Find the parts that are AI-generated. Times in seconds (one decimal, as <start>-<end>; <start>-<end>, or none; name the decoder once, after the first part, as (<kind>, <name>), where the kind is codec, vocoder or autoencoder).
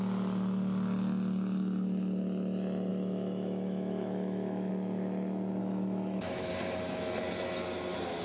2.9-4.7 (autoencoder, DAC-VAE); 5.6-6.5